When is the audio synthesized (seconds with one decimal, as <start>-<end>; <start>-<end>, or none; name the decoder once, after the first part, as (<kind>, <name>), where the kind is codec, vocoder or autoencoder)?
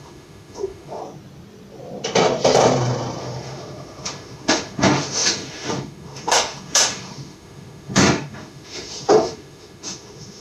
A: 0.0-1.0 (autoencoder, DAC-VAE); 3.2-10.4